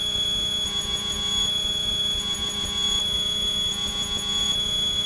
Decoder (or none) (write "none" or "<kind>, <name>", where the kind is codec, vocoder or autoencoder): vocoder, Vocos